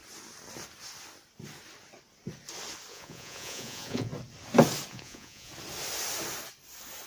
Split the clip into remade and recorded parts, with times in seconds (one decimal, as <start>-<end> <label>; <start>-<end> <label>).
0.0-2.9 recorded; 2.9-4.1 remade; 4.1-4.9 recorded; 4.9-5.5 remade; 5.5-7.1 recorded